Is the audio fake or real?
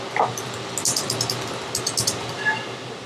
real